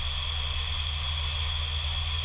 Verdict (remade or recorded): recorded